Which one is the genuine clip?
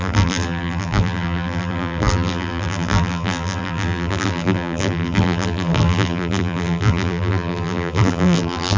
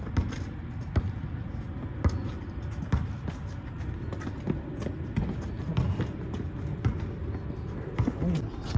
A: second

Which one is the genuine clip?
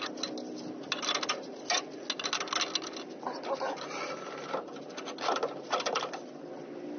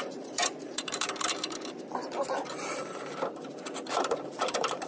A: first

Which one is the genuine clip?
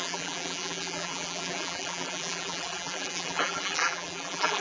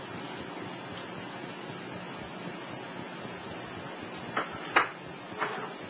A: second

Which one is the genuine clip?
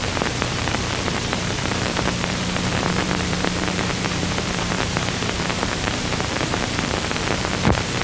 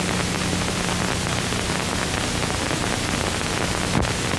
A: second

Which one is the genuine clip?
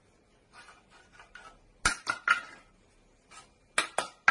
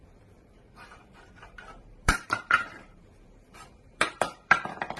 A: first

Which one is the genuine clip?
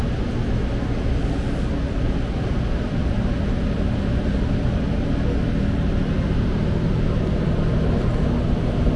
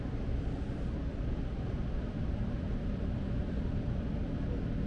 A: first